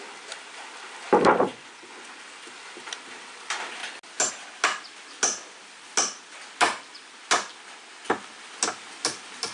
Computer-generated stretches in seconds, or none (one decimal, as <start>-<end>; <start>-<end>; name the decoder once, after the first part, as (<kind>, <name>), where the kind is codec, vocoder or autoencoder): 1.5-2.2 (vocoder, Vocos)